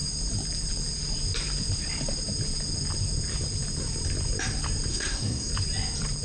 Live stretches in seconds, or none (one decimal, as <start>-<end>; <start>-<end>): 0.0-4.9; 5.5-6.2